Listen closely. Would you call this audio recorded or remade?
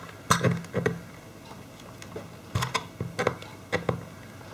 recorded